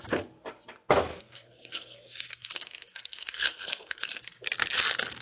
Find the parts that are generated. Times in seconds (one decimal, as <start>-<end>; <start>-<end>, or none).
1.1-4.2